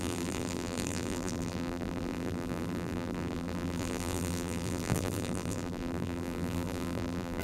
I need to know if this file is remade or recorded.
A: remade